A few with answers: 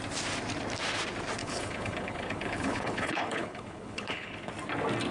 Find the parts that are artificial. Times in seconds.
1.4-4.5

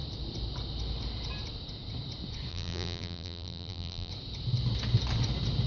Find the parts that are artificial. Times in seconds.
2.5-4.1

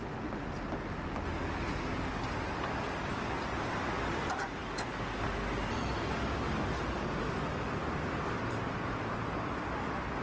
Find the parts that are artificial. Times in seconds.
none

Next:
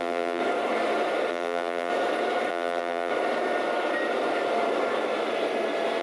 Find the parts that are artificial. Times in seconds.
0.0-0.4; 1.3-1.9; 2.5-3.1